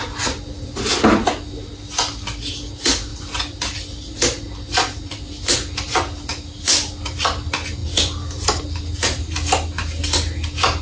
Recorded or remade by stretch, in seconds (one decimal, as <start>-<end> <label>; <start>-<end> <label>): 0.0-10.8 recorded